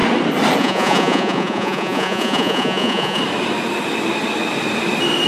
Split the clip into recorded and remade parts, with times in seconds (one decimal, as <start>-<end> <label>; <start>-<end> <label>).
0.0-0.6 recorded; 0.6-3.2 remade; 3.2-5.3 recorded